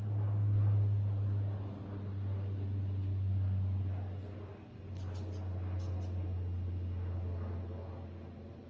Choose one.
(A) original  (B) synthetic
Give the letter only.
A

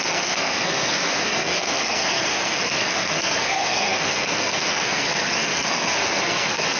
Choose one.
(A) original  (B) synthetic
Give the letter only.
B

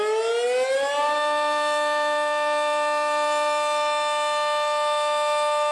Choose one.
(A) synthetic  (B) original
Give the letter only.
B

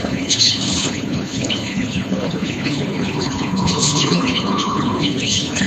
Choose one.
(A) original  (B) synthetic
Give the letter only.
B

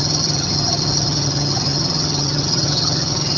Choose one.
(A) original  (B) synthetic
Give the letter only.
B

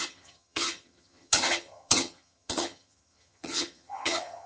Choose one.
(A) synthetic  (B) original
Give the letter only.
A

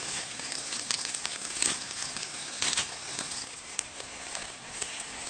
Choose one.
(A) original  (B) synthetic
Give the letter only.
B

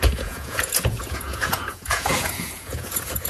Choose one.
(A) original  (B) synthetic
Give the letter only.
B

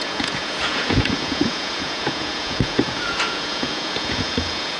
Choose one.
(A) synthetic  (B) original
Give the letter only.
A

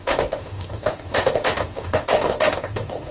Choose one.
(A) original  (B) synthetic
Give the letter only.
B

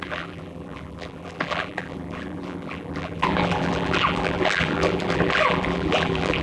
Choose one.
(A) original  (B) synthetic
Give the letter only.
B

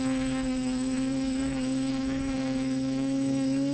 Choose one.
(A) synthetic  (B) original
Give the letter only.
A